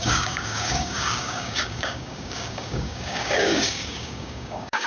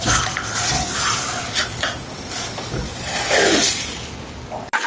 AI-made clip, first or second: first